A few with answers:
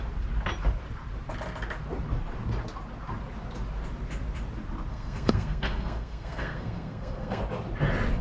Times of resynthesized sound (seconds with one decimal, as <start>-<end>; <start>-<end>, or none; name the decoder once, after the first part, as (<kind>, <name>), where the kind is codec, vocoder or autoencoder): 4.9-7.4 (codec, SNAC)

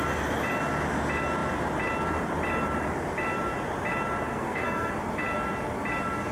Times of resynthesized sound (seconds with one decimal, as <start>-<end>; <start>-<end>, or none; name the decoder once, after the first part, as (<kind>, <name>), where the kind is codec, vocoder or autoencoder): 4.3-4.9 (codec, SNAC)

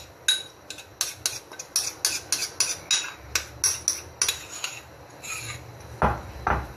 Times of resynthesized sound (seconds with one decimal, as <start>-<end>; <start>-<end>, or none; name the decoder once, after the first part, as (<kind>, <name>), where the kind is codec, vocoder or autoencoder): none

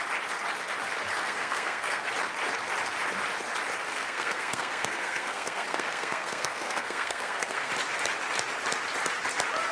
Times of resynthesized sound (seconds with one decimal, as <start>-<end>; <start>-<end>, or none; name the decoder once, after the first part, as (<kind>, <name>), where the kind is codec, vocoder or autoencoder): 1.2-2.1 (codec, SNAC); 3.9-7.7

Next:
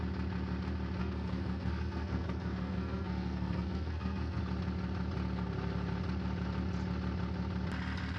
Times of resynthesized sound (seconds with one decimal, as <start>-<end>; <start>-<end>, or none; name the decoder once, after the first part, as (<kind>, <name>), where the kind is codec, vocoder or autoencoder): 1.0-4.4 (codec, SNAC)

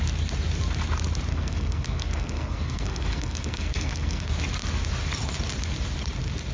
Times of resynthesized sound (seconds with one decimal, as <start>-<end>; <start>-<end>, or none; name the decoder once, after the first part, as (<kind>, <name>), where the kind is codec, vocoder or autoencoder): 1.3-4.3 (codec, SNAC)

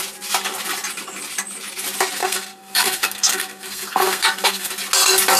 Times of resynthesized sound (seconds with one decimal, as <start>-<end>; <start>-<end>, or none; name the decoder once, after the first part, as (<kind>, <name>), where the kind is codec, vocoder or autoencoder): 2.2-4.7 (codec, SNAC)

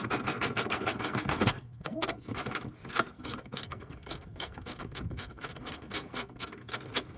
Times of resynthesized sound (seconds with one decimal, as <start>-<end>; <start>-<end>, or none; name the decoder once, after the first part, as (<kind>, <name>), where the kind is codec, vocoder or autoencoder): 0.0-2.3 (codec, SNAC); 2.9-7.2